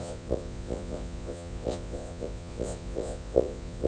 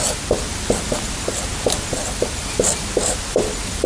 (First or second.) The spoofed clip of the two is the first